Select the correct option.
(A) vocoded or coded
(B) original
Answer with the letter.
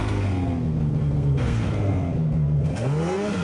A